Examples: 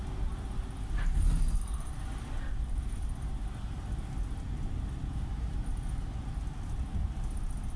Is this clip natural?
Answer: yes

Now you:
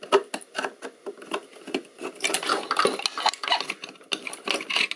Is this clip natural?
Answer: yes